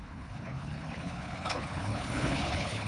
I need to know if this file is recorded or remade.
remade